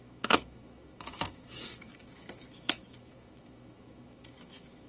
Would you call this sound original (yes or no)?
no